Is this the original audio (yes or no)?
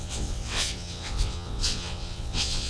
no